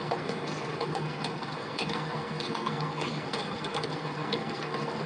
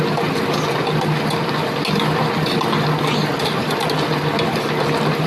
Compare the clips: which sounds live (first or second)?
second